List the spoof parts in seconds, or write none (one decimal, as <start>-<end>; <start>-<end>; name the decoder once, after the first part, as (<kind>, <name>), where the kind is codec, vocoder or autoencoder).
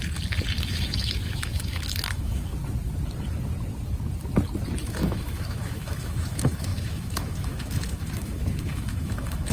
0.7-2.5 (autoencoder, DAC-VAE); 4.8-9.5